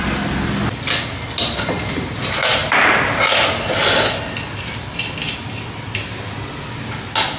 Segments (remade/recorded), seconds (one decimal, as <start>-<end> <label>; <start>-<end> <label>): 0.0-7.4 recorded